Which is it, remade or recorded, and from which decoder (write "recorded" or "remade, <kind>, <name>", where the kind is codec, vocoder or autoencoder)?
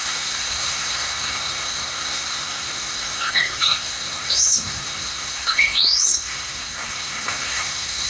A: remade, codec, SNAC